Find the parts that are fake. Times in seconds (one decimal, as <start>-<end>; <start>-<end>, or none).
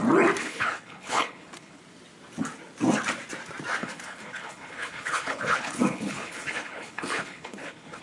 0.4-1.8; 3.8-8.0